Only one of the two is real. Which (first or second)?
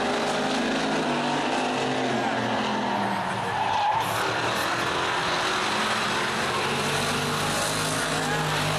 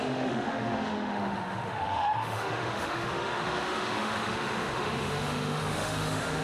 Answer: first